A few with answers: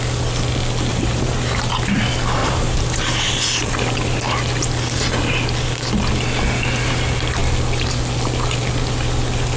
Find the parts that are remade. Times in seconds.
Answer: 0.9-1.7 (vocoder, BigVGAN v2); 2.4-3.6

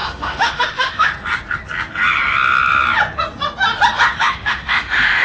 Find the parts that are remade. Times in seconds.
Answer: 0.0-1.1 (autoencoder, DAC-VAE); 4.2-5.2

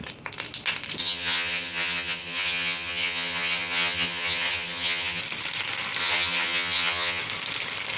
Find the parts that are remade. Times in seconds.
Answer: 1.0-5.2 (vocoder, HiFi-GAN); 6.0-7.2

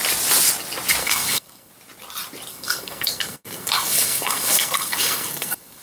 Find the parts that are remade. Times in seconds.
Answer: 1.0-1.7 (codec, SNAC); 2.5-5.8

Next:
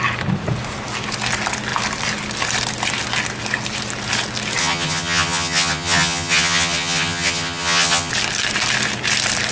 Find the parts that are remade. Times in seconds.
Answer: 4.6-8.1 (vocoder, HiFi-GAN)